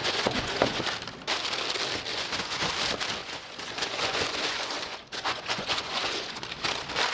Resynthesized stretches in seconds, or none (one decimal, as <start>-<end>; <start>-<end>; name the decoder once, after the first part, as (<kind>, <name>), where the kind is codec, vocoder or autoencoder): 0.0-0.8 (vocoder, Vocos); 2.1-2.7; 3.2-6.4